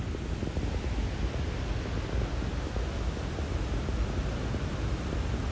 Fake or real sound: real